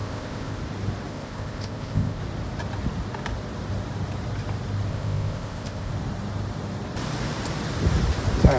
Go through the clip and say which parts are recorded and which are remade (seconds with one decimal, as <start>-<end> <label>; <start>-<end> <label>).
0.0-0.6 remade; 0.6-1.1 recorded; 1.1-2.2 remade; 2.2-4.9 recorded; 4.9-5.9 remade; 5.9-8.6 recorded